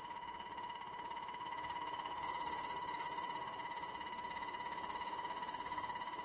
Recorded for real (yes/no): no